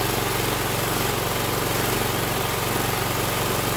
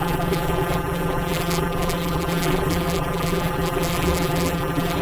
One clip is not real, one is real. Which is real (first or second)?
first